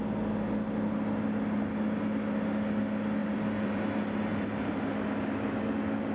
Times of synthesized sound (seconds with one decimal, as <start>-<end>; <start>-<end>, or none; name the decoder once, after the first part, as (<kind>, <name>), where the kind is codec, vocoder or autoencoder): 3.2-3.8 (vocoder, BigVGAN v2); 4.3-4.8

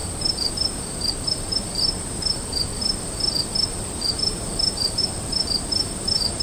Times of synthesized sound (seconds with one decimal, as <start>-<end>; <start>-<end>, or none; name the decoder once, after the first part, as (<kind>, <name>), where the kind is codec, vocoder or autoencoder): none

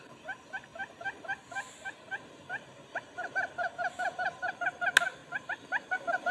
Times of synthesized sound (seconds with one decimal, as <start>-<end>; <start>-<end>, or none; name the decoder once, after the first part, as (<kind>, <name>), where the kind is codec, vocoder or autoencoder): 5.2-6.3 (vocoder, BigVGAN v2)

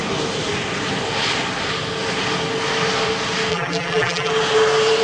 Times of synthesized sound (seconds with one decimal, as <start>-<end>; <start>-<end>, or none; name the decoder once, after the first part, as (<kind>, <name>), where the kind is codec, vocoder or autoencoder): 3.5-4.3 (vocoder, BigVGAN v2)

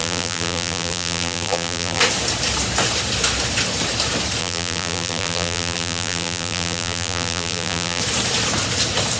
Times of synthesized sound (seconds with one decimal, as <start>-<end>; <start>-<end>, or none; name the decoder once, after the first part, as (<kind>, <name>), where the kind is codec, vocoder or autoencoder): 0.0-2.0 (vocoder, BigVGAN v2); 4.4-8.0

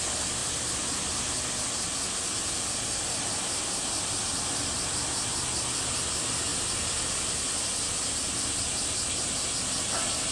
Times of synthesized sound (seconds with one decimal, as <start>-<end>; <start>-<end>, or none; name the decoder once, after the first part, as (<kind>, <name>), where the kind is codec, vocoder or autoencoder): none

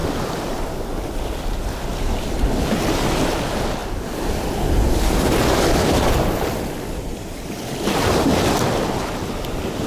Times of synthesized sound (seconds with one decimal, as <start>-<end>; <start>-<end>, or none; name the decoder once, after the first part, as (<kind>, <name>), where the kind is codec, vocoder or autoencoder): 0.0-1.0 (vocoder, BigVGAN v2); 3.8-4.9

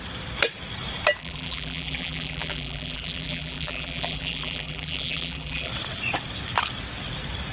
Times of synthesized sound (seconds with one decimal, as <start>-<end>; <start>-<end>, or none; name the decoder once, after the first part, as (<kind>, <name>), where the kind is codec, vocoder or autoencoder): 1.2-5.7 (vocoder, BigVGAN v2)